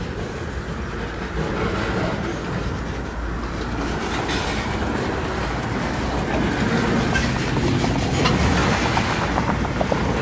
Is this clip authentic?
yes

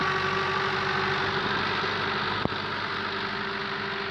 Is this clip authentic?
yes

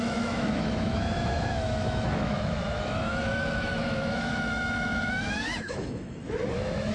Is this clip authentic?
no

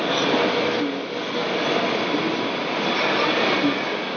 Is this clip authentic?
yes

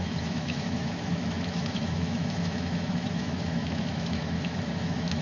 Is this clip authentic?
no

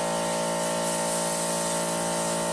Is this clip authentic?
yes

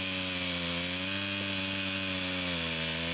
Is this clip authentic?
yes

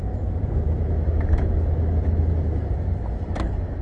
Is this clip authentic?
no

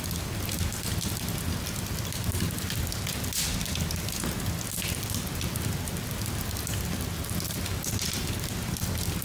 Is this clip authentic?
yes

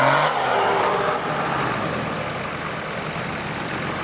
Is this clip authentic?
yes